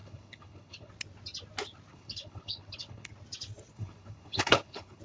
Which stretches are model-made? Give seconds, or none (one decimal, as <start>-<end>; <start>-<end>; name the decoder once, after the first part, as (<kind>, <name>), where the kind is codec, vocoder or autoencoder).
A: 0.0-0.9 (codec, HILCodec); 1.9-3.1; 3.7-5.0